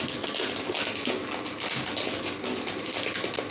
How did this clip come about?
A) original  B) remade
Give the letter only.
A